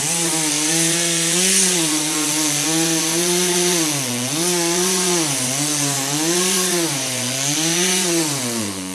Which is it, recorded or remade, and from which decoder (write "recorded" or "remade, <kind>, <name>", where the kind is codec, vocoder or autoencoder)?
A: remade, vocoder, Vocos